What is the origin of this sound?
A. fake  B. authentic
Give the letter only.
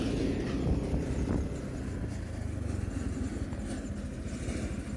B